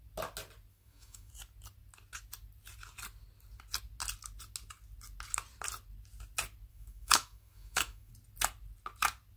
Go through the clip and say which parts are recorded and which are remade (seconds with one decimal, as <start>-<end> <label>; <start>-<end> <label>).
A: 0.0-0.7 recorded; 0.7-1.3 remade; 1.3-6.7 recorded; 6.7-8.1 remade; 8.1-9.4 recorded